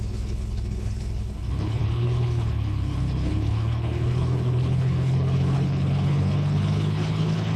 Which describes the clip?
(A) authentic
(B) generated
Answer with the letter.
B